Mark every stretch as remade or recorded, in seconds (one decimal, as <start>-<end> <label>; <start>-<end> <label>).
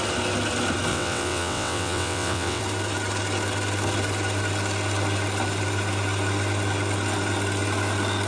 0.0-0.9 recorded; 0.9-2.6 remade; 2.6-8.3 recorded